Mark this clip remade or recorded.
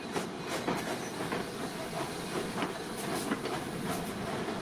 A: recorded